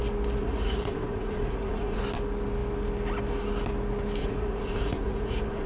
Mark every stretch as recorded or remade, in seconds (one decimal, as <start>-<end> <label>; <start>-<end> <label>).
0.0-0.4 recorded; 0.4-2.0 remade; 2.0-4.2 recorded; 4.2-5.7 remade